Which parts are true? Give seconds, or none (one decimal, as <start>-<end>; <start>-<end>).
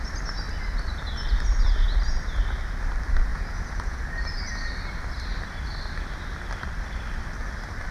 0.0-3.3; 4.0-7.9